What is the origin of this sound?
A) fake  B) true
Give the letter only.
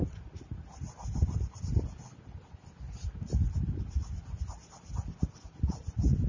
B